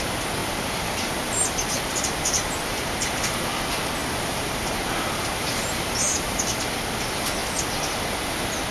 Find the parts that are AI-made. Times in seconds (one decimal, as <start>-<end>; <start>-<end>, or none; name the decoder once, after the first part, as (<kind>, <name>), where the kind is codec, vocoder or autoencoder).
0.4-3.5 (vocoder, BigVGAN v2); 4.0-6.4